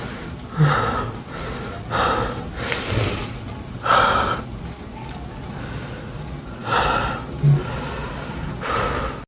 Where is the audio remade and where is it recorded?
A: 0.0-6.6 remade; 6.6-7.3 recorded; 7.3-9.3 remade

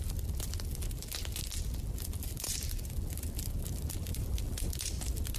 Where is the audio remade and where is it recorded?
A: 0.0-5.4 recorded

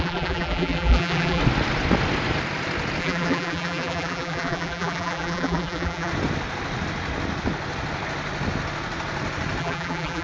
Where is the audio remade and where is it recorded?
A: 0.0-1.4 remade; 1.4-3.0 recorded; 3.0-6.1 remade; 6.1-9.6 recorded; 9.6-10.2 remade

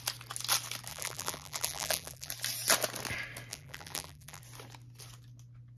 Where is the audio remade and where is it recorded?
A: 0.0-0.9 recorded; 0.9-2.3 remade; 2.3-3.5 recorded; 3.5-4.4 remade; 4.4-5.8 recorded

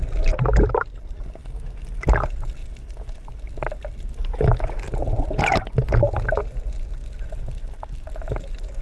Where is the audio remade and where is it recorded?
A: 0.0-7.0 recorded; 7.0-8.3 remade; 8.3-8.8 recorded

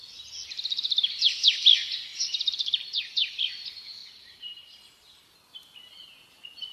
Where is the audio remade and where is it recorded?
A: 0.0-2.1 recorded; 2.1-3.4 remade; 3.4-4.0 recorded; 4.0-4.8 remade; 4.8-6.7 recorded

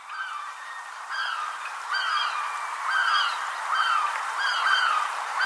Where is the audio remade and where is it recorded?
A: 0.0-1.2 remade; 1.2-2.0 recorded; 2.0-5.5 remade